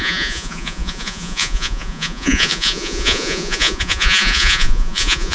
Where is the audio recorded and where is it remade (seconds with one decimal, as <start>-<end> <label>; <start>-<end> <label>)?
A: 0.0-5.3 remade

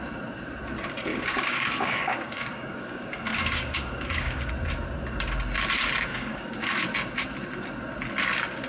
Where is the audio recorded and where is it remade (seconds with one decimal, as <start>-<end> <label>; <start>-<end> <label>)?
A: 0.0-1.1 recorded; 1.1-4.5 remade; 4.5-6.1 recorded; 6.1-6.8 remade; 6.8-8.7 recorded